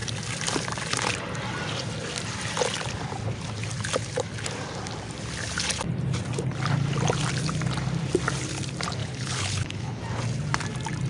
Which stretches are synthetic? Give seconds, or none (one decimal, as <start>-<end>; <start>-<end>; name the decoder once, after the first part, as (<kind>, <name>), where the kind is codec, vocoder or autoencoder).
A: 9.0-10.0 (codec, HILCodec)